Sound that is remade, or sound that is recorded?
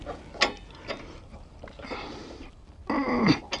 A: recorded